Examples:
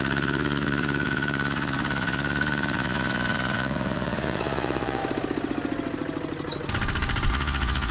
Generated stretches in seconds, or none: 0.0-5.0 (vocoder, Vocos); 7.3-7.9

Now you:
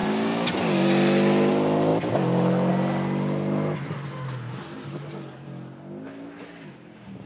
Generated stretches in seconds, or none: none

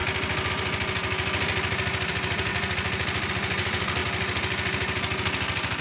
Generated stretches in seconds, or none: none